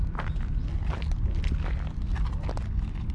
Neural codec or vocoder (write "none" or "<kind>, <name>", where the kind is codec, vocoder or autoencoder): none